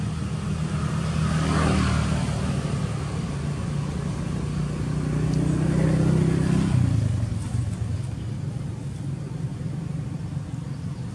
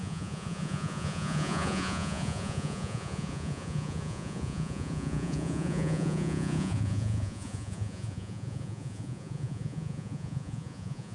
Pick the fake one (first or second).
second